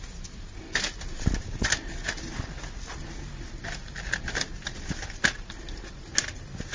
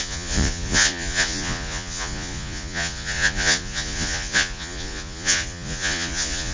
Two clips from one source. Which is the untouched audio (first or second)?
first